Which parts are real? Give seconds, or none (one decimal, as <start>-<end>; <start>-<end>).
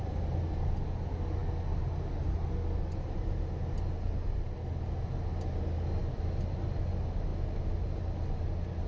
0.0-8.9